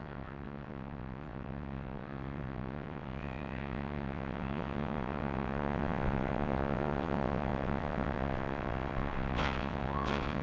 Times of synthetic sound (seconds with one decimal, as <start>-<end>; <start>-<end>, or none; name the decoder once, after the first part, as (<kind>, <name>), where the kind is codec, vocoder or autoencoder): 0.0-10.4 (vocoder, WaveNeXt)